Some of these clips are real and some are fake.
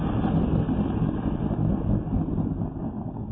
real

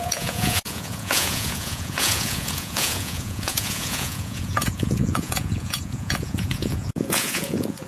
fake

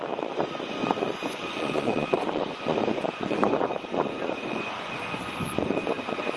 fake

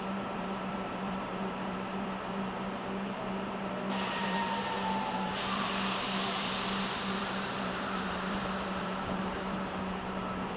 fake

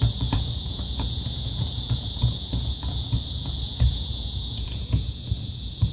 fake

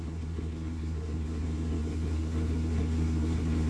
fake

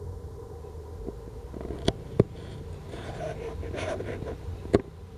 real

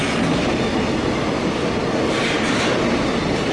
real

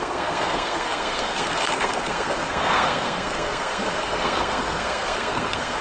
fake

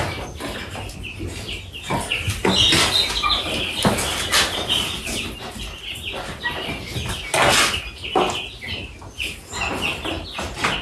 real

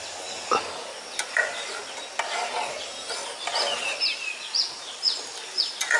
real